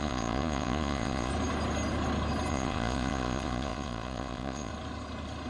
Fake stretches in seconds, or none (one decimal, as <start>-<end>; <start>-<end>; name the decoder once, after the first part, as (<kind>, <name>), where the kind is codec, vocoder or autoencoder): 0.0-1.3 (vocoder, Vocos); 2.5-4.7